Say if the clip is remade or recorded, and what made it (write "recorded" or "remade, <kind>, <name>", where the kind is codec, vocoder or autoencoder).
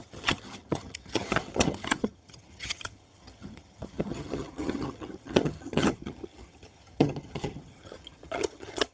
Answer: remade, vocoder, HiFi-GAN